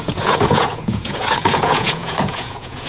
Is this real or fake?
fake